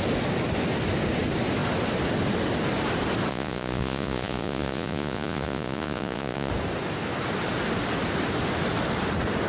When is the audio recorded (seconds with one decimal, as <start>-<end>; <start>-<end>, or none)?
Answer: 0.0-3.3; 6.5-9.5